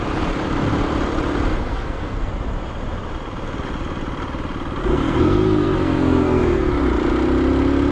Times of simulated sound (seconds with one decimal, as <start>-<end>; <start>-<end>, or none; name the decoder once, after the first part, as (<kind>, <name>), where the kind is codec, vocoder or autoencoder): 1.5-2.3 (codec, SNAC); 4.8-6.7